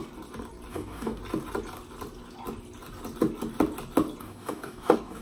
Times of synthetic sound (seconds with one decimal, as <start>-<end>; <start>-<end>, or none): 0.7-1.2; 4.2-5.2